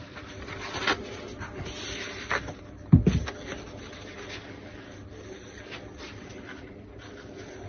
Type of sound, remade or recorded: recorded